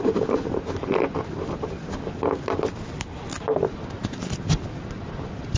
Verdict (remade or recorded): recorded